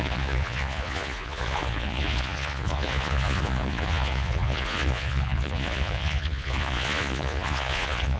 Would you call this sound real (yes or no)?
no